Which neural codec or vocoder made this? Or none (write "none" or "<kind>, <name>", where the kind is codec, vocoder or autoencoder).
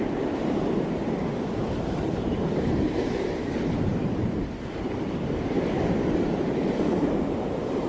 vocoder, BigVGAN v2